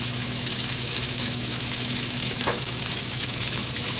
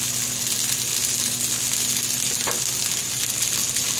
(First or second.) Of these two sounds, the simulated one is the first